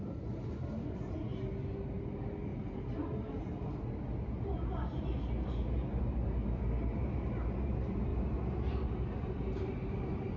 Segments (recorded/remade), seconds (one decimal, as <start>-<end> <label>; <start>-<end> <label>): 0.0-10.4 recorded